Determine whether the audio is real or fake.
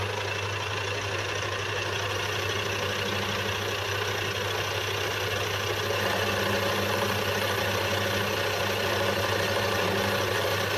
real